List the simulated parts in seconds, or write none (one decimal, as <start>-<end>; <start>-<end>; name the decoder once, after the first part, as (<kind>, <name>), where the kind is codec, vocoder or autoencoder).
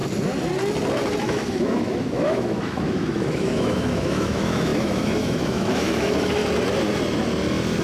1.2-6.4 (autoencoder, DAC-VAE)